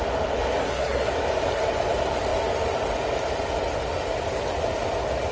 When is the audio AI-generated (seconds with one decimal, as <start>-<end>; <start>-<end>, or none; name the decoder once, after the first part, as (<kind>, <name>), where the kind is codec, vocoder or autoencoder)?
0.6-1.1 (codec, SNAC)